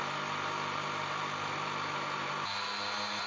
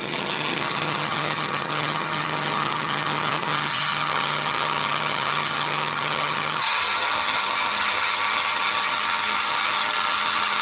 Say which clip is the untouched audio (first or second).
first